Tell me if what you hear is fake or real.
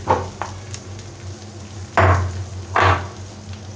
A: real